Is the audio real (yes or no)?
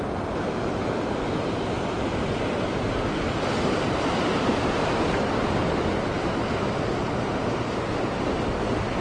yes